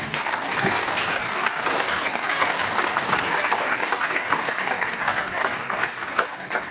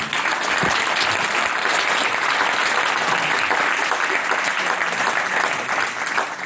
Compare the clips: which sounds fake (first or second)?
first